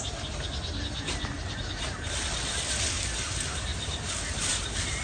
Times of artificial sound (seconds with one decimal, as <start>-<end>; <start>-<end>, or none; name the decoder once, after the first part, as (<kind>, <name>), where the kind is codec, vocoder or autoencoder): none